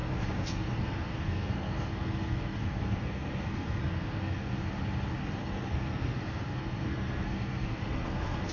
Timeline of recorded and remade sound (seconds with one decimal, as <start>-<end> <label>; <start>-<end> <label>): 0.0-4.6 remade; 4.6-5.2 recorded; 5.2-8.5 remade